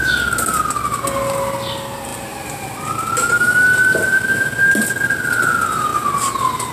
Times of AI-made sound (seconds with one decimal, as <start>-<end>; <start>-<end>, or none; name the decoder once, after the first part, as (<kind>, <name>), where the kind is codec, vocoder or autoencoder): none